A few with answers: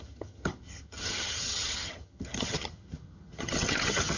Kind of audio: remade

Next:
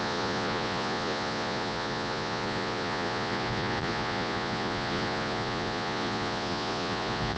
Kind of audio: remade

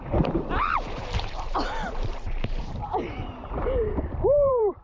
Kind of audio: remade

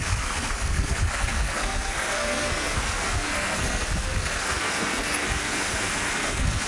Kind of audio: remade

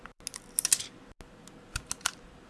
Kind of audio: recorded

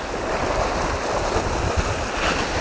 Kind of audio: recorded